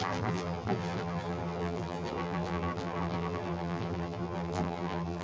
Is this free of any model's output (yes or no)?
no